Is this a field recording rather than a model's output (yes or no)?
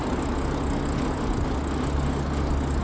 yes